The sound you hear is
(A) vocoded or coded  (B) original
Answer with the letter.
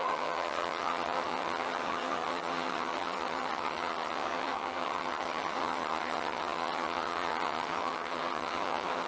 A